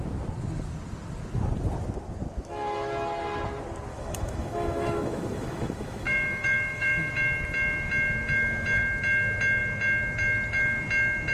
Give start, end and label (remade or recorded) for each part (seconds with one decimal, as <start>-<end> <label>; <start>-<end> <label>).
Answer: 0.0-3.9 recorded; 3.9-7.1 remade; 7.1-11.3 recorded